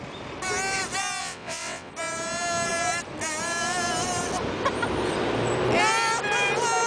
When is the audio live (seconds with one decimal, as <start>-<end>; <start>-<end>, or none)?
0.0-1.2; 1.9-6.9